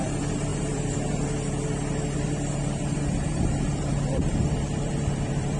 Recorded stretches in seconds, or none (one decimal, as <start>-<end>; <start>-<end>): none